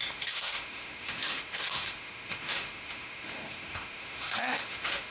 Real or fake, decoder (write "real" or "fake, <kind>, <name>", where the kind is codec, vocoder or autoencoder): fake, autoencoder, DAC-VAE